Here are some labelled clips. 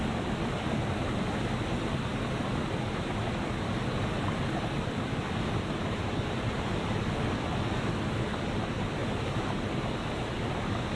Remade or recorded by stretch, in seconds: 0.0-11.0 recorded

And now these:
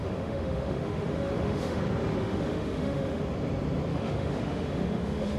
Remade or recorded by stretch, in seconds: 0.0-1.8 remade; 1.8-2.2 recorded; 2.2-3.2 remade; 3.2-3.9 recorded; 3.9-5.4 remade

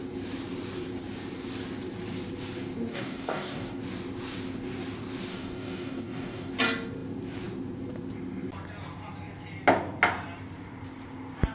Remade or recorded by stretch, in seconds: 0.0-2.9 recorded; 2.9-3.8 remade; 3.8-5.3 recorded; 5.3-6.5 remade; 6.5-11.5 recorded

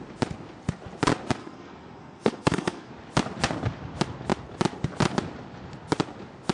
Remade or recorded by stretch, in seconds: 0.0-1.4 recorded; 1.4-2.9 remade; 2.9-6.5 recorded

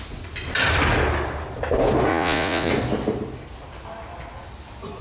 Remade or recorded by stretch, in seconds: 0.0-2.1 recorded; 2.1-2.7 remade; 2.7-5.0 recorded

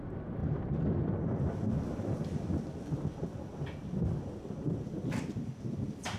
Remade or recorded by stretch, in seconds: 0.0-6.2 recorded

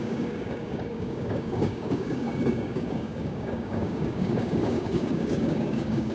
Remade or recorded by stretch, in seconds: 0.0-6.1 remade

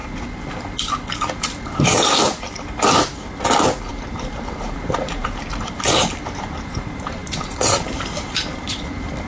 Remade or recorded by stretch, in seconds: 0.0-3.9 recorded; 3.9-9.3 remade